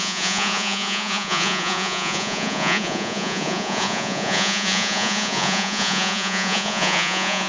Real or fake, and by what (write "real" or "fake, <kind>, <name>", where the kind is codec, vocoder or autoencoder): fake, vocoder, Vocos